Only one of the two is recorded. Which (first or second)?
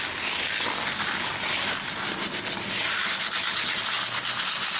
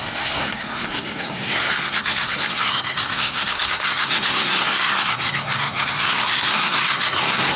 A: first